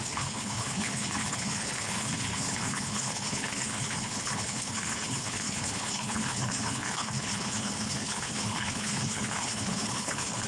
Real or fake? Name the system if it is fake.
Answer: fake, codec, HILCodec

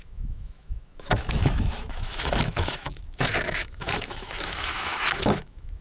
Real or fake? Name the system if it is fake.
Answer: fake, autoencoder, DAC-VAE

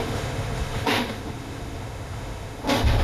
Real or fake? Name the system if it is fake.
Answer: fake, autoencoder, DAC-VAE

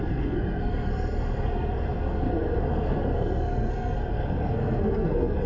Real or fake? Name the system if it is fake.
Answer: fake, codec, SNAC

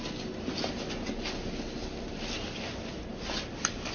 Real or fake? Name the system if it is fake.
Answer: real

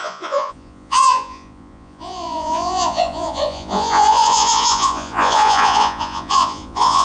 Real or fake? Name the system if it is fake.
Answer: fake, vocoder, Vocos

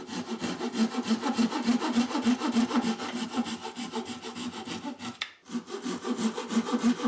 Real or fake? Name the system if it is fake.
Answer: real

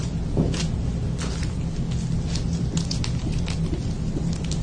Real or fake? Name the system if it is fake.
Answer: real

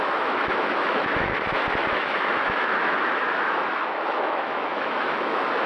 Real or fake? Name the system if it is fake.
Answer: fake, autoencoder, DAC-VAE